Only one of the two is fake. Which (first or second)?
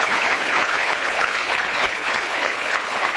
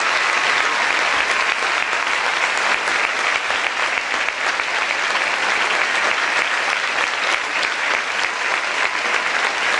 first